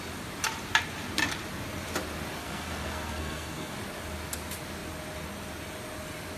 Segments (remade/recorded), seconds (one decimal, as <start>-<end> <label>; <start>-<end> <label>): 0.0-2.4 recorded; 2.4-3.7 remade; 3.7-6.4 recorded